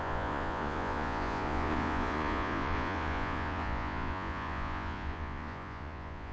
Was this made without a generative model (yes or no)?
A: no